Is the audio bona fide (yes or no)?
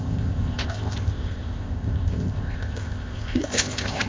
no